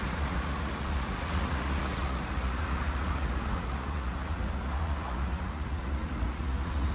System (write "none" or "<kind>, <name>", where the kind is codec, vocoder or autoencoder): vocoder, Vocos